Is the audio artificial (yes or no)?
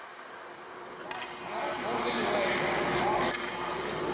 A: no